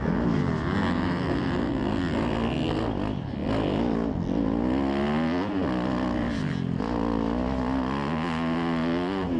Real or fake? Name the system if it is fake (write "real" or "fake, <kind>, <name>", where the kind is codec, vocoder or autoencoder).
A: real